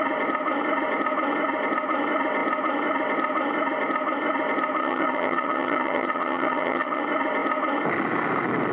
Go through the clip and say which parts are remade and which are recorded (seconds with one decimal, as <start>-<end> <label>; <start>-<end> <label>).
0.0-4.8 recorded; 4.8-7.0 remade; 7.0-8.7 recorded